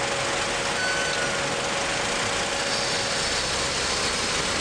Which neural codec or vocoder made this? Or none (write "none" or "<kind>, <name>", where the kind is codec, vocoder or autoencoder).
none